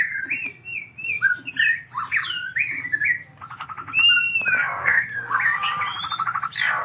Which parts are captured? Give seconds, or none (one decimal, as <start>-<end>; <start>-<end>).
0.0-4.8; 5.4-6.8